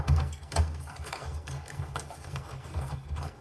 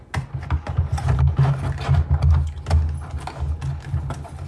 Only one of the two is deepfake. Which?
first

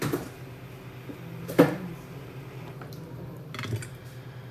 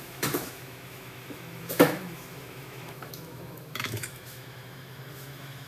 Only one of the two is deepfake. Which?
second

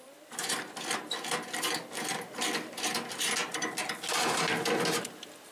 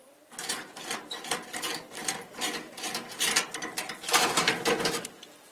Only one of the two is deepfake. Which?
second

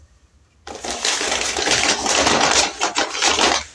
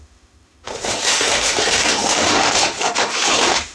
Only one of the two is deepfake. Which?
second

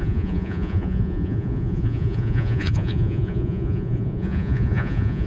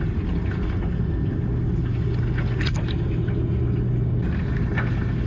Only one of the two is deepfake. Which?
first